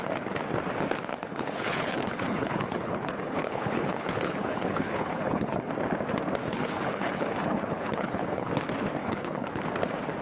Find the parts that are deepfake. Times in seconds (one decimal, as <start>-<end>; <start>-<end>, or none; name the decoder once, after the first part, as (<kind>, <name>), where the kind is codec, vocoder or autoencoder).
1.1-5.7 (codec, HILCodec); 6.4-8.5; 9.0-9.6